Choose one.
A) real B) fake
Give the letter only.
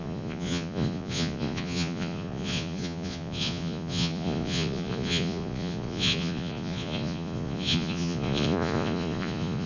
B